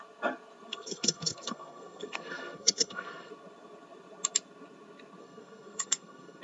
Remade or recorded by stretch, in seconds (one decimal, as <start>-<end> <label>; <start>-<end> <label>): 0.0-0.7 recorded; 0.7-3.3 remade; 3.3-5.2 recorded; 5.2-6.4 remade